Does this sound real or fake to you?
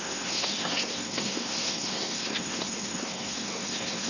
fake